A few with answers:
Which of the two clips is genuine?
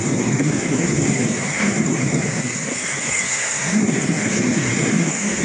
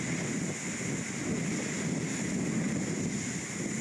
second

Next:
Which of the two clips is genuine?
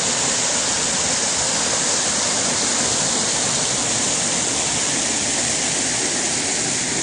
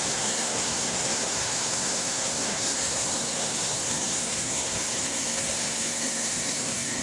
first